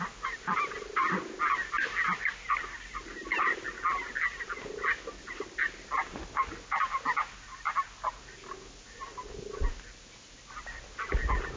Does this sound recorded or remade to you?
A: recorded